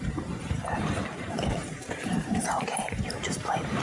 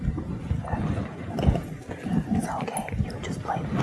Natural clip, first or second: second